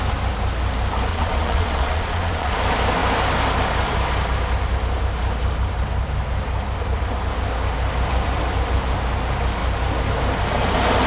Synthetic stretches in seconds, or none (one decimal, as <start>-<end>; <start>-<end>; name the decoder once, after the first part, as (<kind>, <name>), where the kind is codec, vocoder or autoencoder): 1.1-2.5 (vocoder, Vocos)